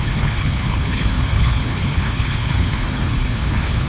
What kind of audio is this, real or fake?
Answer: fake